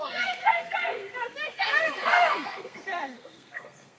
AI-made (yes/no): yes